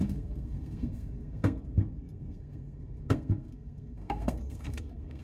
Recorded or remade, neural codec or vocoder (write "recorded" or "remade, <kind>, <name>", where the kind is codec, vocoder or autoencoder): remade, codec, SNAC